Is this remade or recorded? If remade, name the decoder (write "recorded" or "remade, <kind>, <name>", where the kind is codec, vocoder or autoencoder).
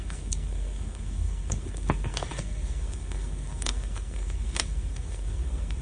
remade, codec, SNAC